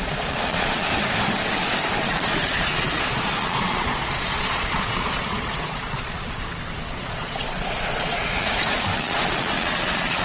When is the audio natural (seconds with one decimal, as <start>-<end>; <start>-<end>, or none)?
0.9-2.0; 6.2-7.0

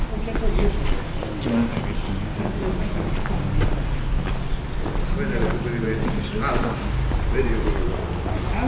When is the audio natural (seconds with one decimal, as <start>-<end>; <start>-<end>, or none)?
0.0-8.7